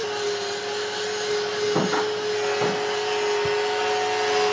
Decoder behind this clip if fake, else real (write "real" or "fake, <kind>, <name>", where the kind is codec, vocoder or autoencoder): real